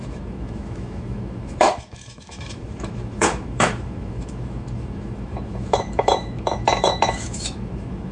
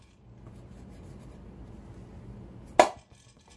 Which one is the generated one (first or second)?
first